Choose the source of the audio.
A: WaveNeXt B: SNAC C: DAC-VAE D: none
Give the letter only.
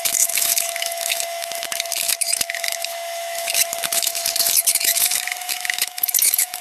C